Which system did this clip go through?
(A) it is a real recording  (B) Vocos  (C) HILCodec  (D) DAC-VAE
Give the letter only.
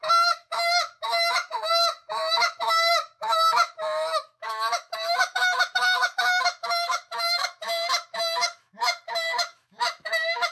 D